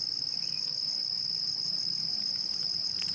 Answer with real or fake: real